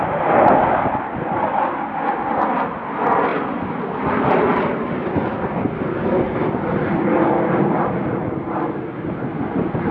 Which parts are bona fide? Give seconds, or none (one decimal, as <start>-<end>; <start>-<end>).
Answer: 0.0-9.9